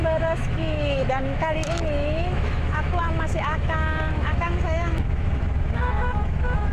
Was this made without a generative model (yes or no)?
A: no